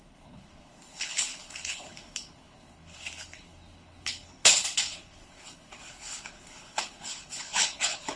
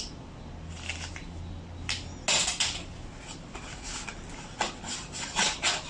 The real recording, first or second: second